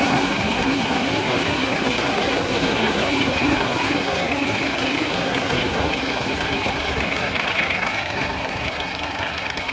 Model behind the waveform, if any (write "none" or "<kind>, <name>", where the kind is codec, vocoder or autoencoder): codec, SNAC